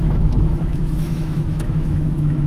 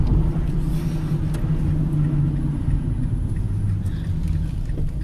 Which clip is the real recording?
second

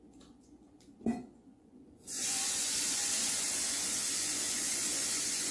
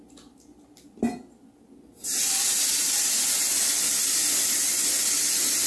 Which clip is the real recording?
second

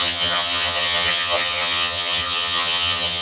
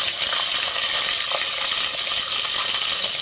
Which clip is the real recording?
second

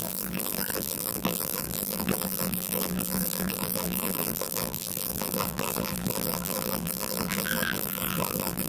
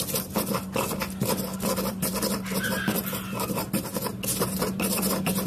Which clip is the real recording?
second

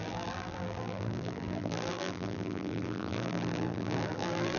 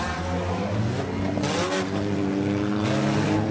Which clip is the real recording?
second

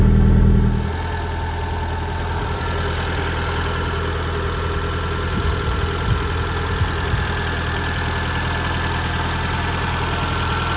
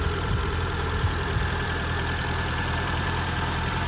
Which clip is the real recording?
first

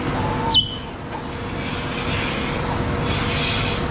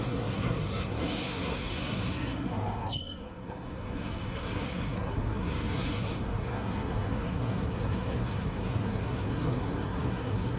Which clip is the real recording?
first